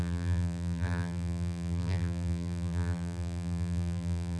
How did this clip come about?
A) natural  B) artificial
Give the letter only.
B